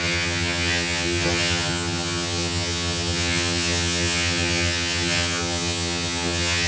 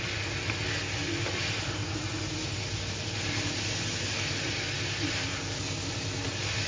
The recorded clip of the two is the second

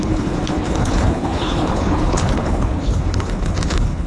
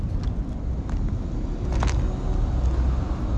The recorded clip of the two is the second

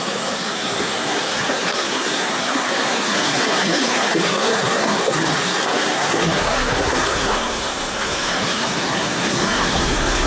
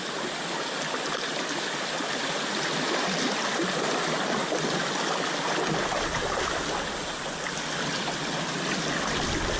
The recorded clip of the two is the second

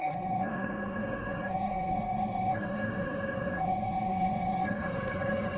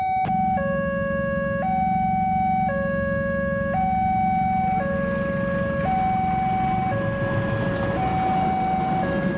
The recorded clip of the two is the second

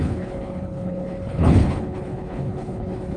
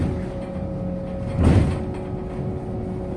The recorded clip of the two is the second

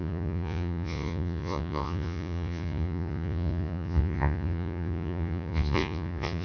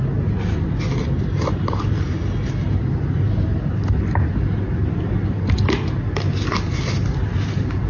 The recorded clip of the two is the second